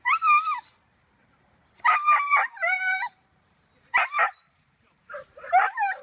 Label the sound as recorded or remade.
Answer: remade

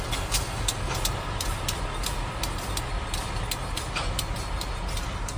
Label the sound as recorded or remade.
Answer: recorded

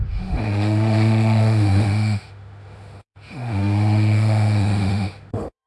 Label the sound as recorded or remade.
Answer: remade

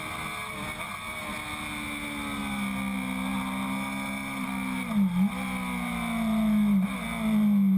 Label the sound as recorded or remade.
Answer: recorded